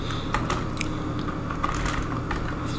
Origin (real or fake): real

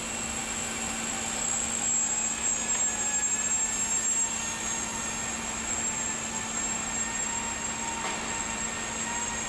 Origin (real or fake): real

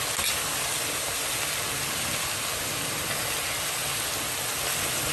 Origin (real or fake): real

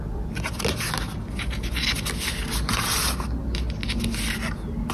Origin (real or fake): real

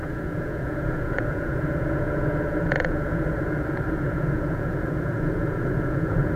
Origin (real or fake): fake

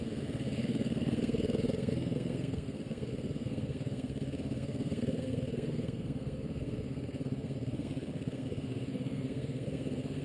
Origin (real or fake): fake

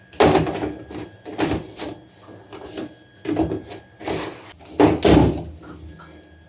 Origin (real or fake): real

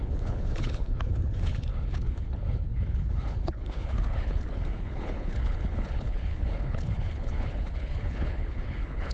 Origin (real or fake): fake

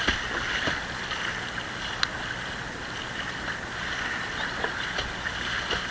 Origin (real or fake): real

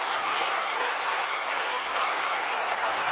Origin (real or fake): fake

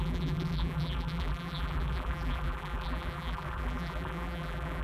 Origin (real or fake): fake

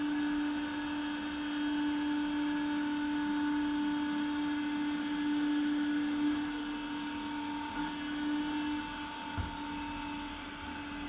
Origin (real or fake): real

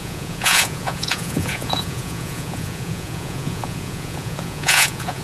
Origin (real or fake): fake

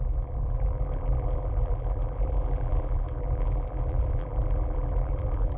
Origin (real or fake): fake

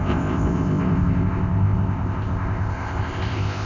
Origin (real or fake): fake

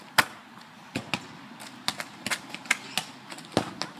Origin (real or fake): real